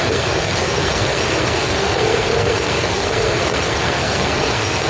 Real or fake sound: fake